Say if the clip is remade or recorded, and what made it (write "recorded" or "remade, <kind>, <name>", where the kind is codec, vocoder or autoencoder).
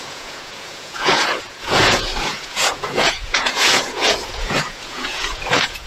remade, vocoder, Vocos